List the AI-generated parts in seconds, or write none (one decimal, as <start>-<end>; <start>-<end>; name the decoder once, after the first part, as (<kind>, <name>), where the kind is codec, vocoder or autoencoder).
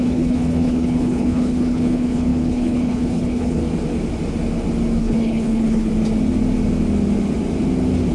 0.0-3.6 (codec, HILCodec); 5.0-5.9